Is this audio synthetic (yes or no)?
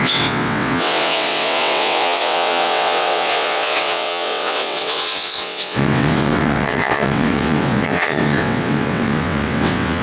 yes